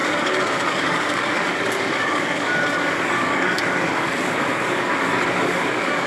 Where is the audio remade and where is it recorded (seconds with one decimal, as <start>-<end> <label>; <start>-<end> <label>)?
0.0-6.1 remade